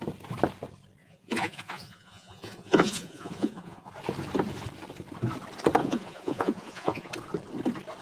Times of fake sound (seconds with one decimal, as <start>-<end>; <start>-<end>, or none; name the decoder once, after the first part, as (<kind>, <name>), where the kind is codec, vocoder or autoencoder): 1.0-3.9 (vocoder, Vocos); 5.8-7.1